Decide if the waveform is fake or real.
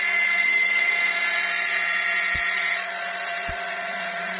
fake